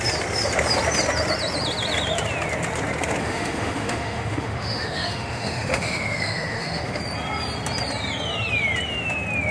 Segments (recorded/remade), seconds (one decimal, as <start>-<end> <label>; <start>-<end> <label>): 0.0-3.2 recorded; 3.2-7.0 remade; 7.0-9.5 recorded